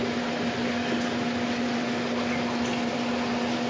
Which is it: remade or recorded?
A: recorded